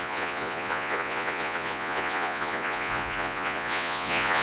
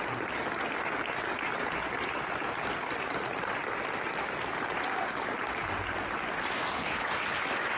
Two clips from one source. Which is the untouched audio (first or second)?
second